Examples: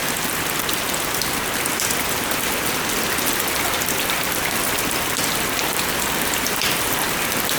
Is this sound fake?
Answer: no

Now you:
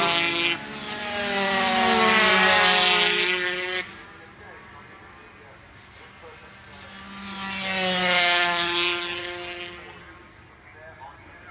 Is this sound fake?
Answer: no